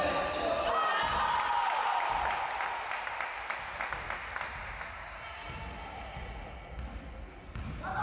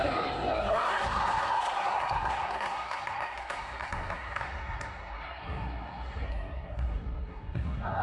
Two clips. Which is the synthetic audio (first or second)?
second